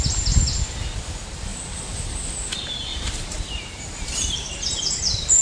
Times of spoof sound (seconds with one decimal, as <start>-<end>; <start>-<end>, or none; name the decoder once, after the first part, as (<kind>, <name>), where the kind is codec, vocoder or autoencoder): 2.9-5.4 (vocoder, BigVGAN v2)